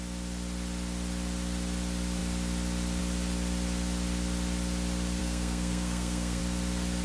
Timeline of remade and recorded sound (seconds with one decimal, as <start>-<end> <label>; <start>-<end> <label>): 0.0-5.2 recorded; 5.2-6.4 remade; 6.4-7.0 recorded